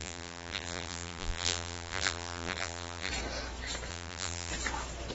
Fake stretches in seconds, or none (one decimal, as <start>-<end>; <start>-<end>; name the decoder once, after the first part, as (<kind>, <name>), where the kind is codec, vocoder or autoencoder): 0.0-3.1 (vocoder, BigVGAN v2); 3.9-4.5